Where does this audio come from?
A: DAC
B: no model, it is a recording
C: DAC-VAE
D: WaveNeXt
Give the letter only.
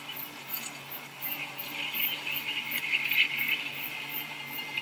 B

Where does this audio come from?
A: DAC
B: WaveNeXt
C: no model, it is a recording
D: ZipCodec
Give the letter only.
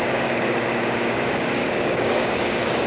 A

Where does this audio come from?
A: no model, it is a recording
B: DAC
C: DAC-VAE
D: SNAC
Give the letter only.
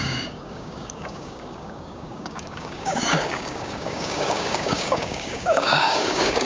B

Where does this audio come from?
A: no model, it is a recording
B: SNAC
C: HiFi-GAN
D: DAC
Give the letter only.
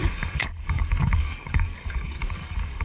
D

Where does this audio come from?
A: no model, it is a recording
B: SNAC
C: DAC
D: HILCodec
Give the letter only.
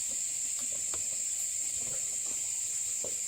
A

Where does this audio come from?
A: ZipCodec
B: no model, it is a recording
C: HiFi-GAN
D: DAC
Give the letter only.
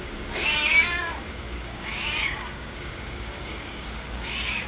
D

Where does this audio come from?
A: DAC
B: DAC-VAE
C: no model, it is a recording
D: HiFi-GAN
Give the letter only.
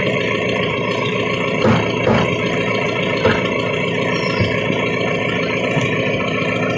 C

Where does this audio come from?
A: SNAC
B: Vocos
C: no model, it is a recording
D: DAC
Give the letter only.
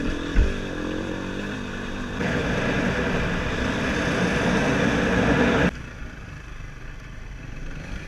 C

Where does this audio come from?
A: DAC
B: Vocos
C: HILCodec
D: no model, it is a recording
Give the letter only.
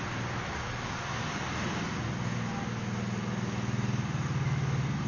D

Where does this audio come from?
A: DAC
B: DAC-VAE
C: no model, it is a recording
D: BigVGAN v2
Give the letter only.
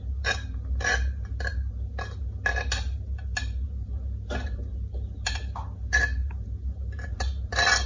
C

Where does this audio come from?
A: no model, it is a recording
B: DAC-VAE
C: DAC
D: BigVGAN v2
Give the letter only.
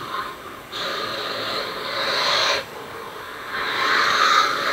C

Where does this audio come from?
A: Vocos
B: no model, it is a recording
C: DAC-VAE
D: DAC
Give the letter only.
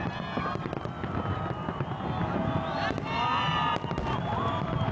B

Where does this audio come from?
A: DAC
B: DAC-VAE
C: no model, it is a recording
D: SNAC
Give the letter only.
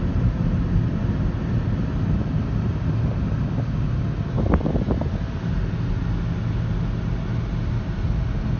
C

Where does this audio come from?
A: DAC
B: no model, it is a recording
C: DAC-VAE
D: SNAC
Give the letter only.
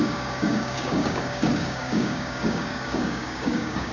A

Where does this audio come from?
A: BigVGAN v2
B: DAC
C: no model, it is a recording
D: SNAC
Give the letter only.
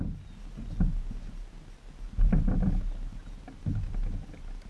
C